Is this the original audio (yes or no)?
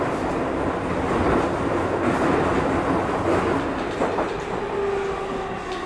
yes